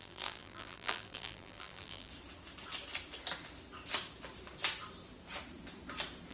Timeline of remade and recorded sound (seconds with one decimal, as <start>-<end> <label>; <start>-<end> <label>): 0.0-2.1 remade; 2.1-6.3 recorded